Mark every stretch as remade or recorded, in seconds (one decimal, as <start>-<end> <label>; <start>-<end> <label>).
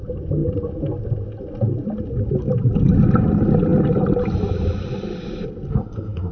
0.0-5.7 recorded; 5.7-6.3 remade